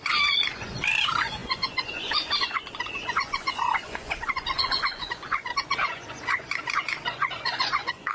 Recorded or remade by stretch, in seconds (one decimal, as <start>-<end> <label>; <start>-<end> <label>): 0.0-8.1 remade